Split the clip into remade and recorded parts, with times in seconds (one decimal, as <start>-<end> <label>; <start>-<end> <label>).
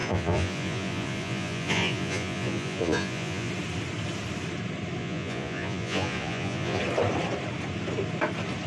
0.0-3.5 remade; 3.5-5.0 recorded; 5.0-6.8 remade; 6.8-8.7 recorded